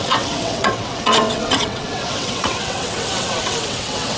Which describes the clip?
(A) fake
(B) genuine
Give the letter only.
A